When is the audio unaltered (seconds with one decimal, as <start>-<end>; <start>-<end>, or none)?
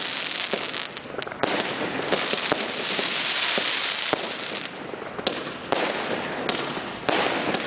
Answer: 0.0-1.4; 5.4-7.7